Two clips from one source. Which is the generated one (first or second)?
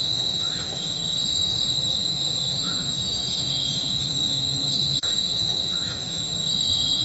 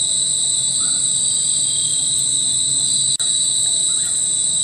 first